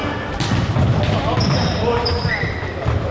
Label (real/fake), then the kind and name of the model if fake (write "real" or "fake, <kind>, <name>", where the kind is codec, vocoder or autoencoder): real